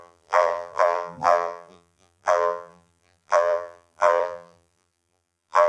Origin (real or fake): fake